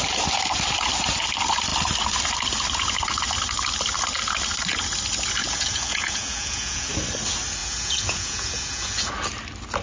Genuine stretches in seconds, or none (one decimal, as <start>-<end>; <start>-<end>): 0.0-5.4; 6.9-7.6; 9.1-9.8